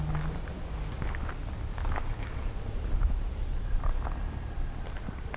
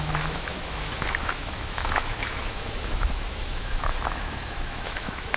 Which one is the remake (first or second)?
second